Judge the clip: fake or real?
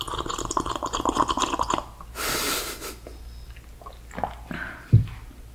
real